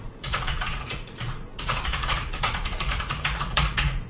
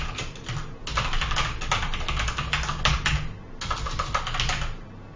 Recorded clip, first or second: second